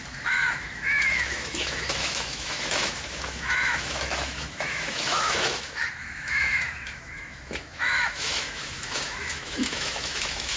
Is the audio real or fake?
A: fake